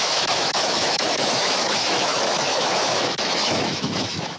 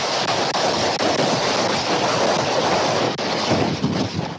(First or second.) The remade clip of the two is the first